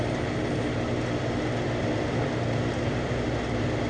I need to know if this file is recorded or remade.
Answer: recorded